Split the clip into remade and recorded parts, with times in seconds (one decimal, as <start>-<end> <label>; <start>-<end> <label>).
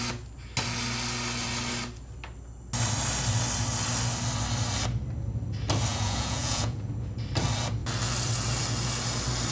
0.0-5.9 recorded; 5.9-6.9 remade; 6.9-9.5 recorded